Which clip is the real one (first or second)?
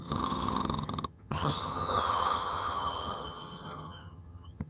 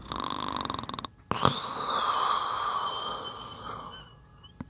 second